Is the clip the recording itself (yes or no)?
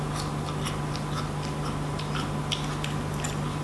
yes